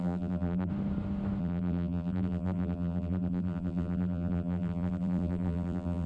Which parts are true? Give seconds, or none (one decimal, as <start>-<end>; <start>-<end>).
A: 0.7-1.4